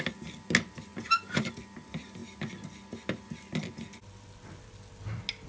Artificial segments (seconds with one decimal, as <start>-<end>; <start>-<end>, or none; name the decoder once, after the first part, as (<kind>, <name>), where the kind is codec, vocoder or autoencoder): 0.9-1.5 (vocoder, BigVGAN v2)